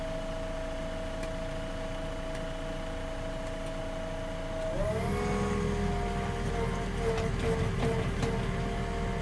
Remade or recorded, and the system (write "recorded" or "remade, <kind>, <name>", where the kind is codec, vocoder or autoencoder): recorded